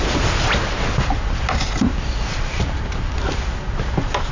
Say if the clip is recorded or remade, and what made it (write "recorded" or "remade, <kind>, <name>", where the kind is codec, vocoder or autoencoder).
recorded